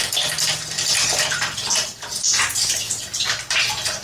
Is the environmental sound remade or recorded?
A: recorded